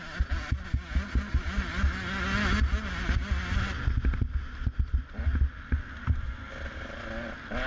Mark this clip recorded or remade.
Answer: recorded